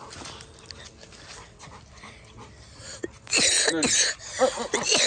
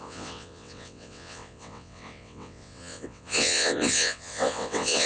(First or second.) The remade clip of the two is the second